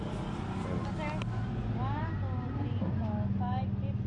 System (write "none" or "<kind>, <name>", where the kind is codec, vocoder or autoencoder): none